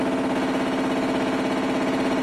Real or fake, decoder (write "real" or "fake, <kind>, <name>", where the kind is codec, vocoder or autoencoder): real